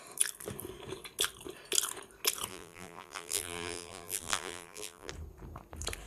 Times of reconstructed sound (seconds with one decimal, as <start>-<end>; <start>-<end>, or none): 2.5-5.1